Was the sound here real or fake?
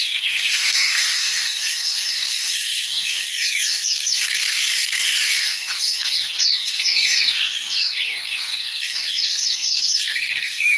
fake